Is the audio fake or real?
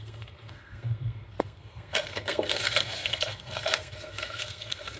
fake